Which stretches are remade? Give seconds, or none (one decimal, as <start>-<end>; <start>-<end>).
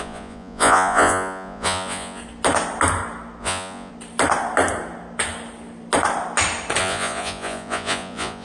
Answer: 0.0-2.2; 3.4-3.9; 6.8-8.4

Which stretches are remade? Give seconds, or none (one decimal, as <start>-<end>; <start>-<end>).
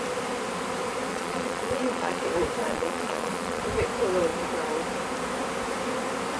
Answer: 1.1-2.2; 2.6-3.6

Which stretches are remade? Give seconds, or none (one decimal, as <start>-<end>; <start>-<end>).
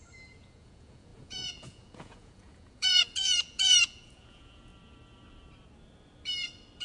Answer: 0.0-4.7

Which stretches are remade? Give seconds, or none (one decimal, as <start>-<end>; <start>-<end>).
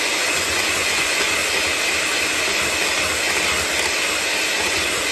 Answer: 0.0-1.4; 4.5-5.1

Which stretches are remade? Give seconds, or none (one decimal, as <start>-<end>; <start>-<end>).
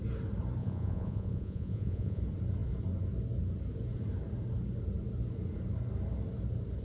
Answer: 0.6-2.2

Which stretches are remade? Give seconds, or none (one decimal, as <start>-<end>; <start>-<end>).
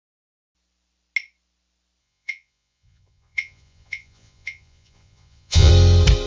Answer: 2.0-5.7